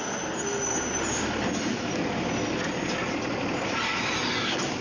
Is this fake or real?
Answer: real